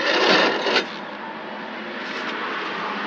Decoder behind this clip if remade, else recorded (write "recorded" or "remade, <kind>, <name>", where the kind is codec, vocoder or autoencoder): recorded